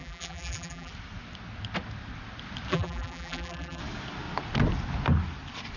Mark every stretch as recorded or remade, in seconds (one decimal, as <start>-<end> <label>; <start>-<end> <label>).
0.0-0.9 remade; 0.9-2.7 recorded; 2.7-3.8 remade; 3.8-5.8 recorded